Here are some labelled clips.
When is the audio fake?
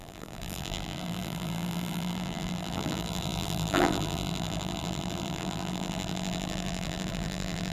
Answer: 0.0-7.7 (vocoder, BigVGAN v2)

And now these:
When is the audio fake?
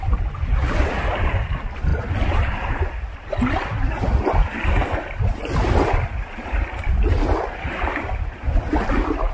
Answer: 0.0-9.3 (vocoder, BigVGAN v2)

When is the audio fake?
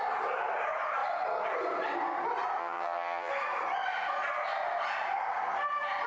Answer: 2.6-3.3 (vocoder, HiFi-GAN)